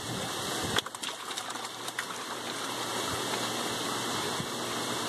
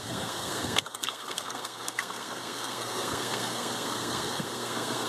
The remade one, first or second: second